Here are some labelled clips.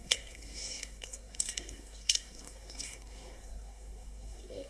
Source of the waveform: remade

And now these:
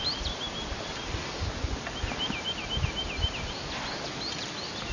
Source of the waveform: recorded